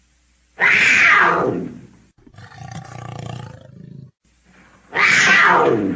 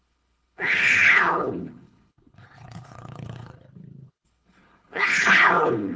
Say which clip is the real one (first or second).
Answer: first